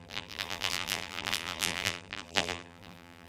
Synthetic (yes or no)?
yes